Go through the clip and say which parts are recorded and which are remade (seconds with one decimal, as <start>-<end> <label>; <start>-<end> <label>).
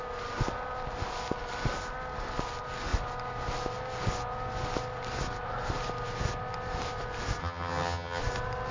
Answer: 0.0-7.4 recorded; 7.4-8.2 remade; 8.2-8.7 recorded